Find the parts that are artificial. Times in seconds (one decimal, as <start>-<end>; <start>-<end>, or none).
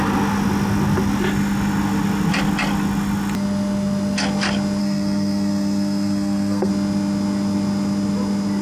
4.8-6.7